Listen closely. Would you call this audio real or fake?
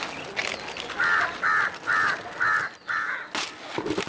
real